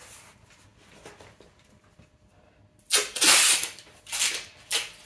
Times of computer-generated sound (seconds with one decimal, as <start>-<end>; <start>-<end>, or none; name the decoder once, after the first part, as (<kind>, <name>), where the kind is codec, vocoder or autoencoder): none